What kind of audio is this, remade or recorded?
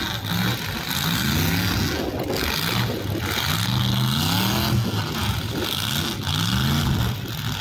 recorded